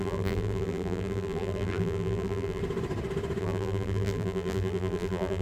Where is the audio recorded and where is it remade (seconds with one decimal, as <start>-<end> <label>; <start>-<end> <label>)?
0.0-2.6 remade; 2.6-3.4 recorded; 3.4-5.4 remade